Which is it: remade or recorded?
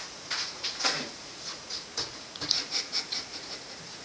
remade